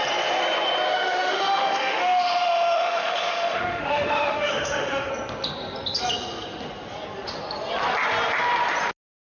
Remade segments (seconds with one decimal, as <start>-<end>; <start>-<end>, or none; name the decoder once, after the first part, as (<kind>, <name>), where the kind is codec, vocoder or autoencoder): 0.9-5.1 (autoencoder, DAC-VAE)